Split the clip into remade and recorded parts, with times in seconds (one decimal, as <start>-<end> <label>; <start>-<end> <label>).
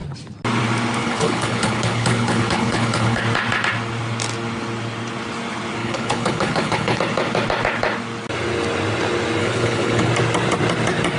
0.0-1.0 recorded; 1.0-3.2 remade; 3.2-5.8 recorded; 5.8-7.0 remade; 7.0-9.4 recorded; 9.4-10.1 remade; 10.1-11.2 recorded